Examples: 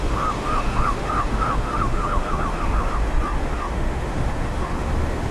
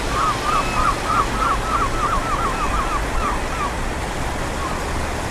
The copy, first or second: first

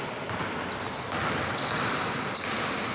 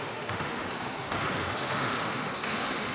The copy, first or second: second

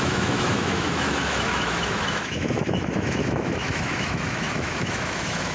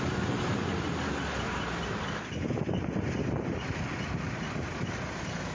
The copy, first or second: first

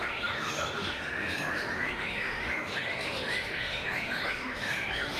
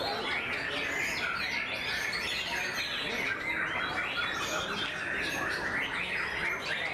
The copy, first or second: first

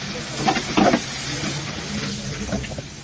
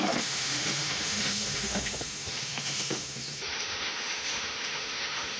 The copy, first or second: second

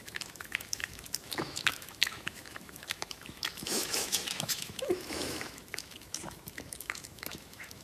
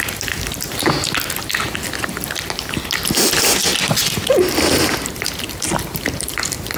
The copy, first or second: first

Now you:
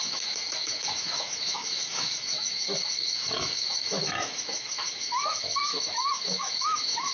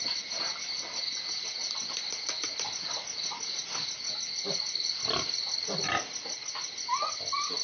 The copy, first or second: first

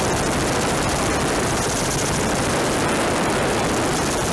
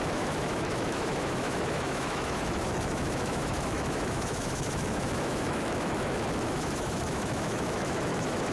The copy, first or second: second